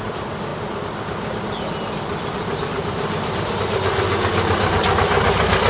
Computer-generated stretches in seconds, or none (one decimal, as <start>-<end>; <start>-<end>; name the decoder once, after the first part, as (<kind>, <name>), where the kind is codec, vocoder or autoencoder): 0.0-5.7 (vocoder, BigVGAN v2)